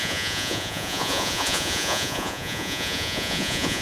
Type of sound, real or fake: fake